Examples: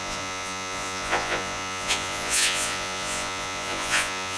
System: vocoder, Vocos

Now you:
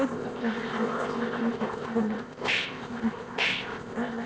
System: codec, ZipCodec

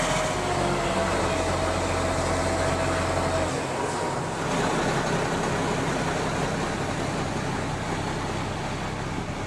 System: none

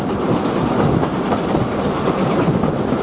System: none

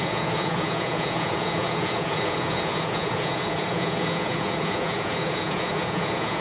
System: vocoder, Vocos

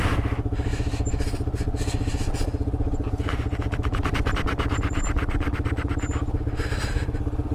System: none